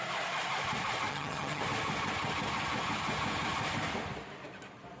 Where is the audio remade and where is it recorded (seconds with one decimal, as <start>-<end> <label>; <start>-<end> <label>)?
0.0-1.1 recorded; 1.1-1.6 remade; 1.6-5.0 recorded